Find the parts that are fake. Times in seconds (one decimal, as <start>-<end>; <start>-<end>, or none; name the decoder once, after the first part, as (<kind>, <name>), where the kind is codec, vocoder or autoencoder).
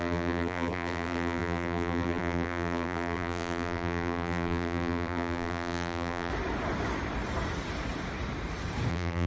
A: 0.0-6.3 (vocoder, BigVGAN v2); 8.9-9.3